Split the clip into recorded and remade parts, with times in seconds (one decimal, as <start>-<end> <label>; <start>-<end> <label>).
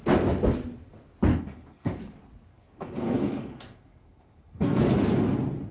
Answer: 0.0-1.3 recorded; 1.3-2.0 remade; 2.0-2.5 recorded; 2.5-4.8 remade; 4.8-5.7 recorded